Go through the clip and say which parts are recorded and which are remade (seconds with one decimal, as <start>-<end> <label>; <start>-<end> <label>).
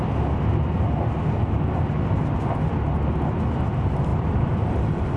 0.0-4.1 recorded; 4.1-4.8 remade; 4.8-5.2 recorded